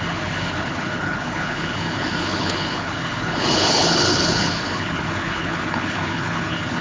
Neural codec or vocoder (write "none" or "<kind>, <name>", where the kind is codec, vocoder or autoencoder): codec, HILCodec